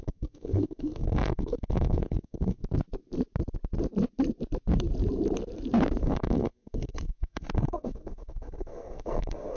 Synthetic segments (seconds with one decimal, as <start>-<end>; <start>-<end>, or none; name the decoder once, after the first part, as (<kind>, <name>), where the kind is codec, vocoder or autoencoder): 0.0-2.6 (codec, SNAC); 6.0-9.6